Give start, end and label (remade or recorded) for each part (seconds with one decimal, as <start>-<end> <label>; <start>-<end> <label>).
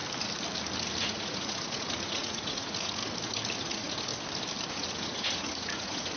0.0-1.0 recorded; 1.0-3.0 remade; 3.0-3.6 recorded; 3.6-4.1 remade; 4.1-4.7 recorded; 4.7-6.2 remade